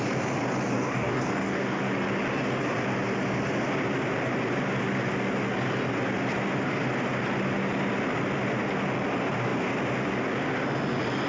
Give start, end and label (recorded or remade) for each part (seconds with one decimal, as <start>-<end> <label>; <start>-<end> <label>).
0.0-0.7 recorded; 0.7-1.8 remade; 1.8-11.3 recorded